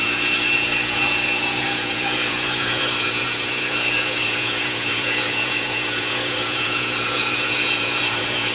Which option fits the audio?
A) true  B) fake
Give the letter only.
B